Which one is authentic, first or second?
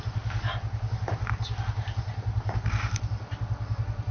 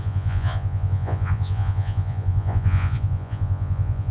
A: first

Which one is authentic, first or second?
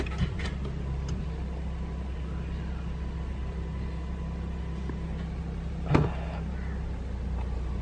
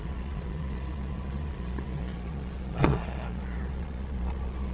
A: first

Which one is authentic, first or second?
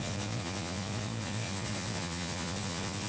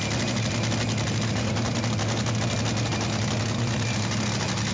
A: second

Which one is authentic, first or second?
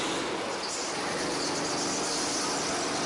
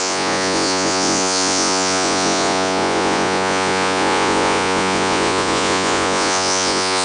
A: first